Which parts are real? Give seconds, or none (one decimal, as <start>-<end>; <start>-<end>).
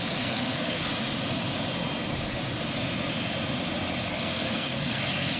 0.9-4.1